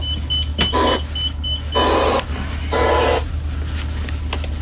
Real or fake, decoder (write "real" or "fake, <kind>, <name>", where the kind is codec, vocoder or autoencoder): real